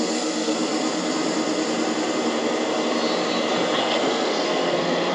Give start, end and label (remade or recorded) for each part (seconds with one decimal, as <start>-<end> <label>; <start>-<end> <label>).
0.0-0.7 remade; 0.7-3.8 recorded; 3.8-5.1 remade